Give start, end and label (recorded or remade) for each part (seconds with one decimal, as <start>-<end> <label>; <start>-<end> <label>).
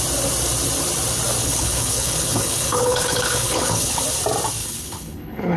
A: 0.0-1.4 recorded; 1.4-4.0 remade; 4.0-4.6 recorded; 4.6-5.6 remade